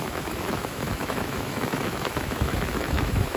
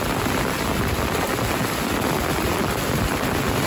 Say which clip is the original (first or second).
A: second